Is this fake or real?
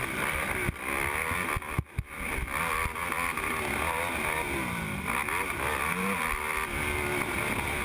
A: real